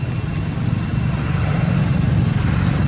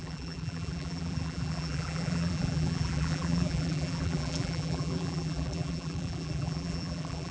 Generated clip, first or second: second